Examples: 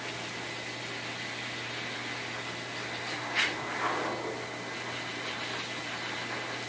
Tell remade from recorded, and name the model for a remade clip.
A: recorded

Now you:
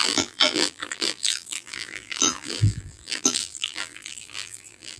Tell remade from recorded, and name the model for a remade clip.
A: remade, vocoder, BigVGAN v2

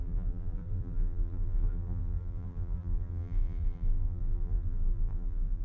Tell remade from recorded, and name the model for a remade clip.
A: remade, vocoder, BigVGAN v2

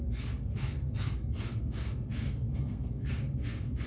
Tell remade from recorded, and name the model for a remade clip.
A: remade, codec, SNAC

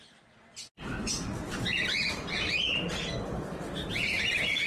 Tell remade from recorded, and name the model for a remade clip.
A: recorded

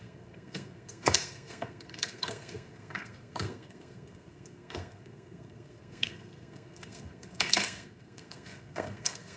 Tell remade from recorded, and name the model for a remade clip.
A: remade, codec, SNAC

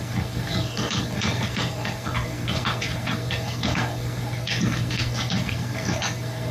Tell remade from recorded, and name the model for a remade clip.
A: remade, codec, SNAC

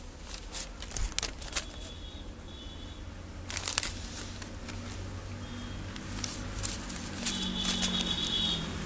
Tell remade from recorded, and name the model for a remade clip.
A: recorded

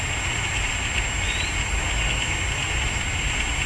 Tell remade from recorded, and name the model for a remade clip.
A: recorded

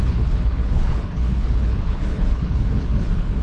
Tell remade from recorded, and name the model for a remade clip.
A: remade, codec, HILCodec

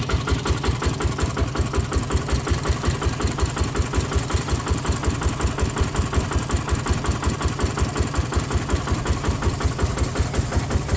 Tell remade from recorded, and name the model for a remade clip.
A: recorded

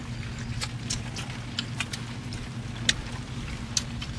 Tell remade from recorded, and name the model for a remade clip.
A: recorded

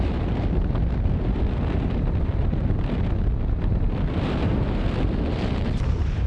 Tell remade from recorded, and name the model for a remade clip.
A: recorded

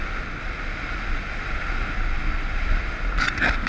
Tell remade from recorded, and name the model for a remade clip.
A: recorded